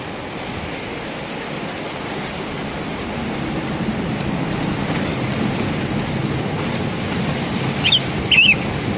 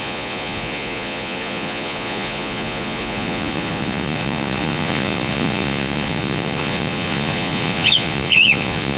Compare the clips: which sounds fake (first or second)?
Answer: second